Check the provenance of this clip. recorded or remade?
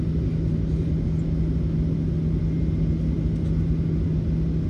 recorded